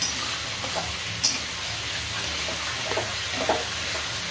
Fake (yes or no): no